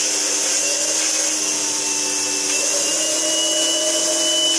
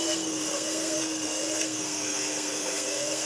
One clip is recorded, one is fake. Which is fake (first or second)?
second